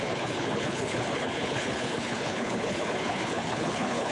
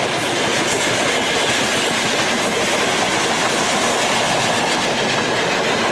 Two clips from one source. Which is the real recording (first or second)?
second